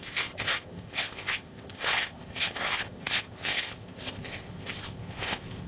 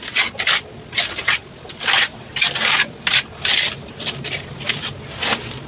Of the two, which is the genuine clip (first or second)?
second